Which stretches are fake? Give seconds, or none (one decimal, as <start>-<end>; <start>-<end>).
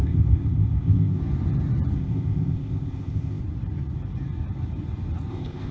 0.0-1.2; 2.0-3.4; 5.3-5.7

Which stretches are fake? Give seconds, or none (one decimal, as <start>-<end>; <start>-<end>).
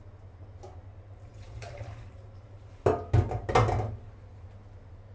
1.3-2.7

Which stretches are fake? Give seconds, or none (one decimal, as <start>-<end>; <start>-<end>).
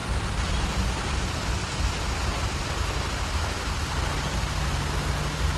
none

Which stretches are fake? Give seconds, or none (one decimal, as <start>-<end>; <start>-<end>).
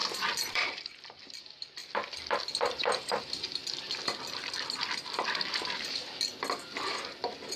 0.0-1.4; 1.8-3.2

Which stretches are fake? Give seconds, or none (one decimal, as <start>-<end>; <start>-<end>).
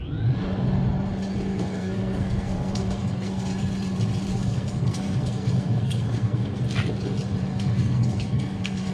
1.5-3.5; 4.3-6.6; 7.5-8.9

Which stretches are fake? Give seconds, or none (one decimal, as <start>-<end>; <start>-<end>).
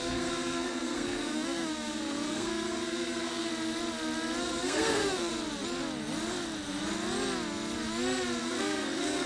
0.0-3.5; 4.4-5.3; 8.4-9.3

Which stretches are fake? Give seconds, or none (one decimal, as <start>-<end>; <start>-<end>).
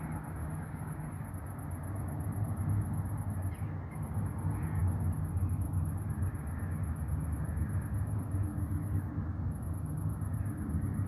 0.4-1.3; 8.5-9.1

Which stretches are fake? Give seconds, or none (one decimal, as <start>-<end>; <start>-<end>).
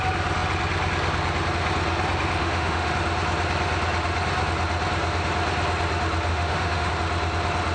2.4-2.9; 6.3-6.9